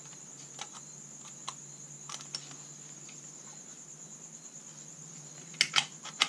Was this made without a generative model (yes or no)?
yes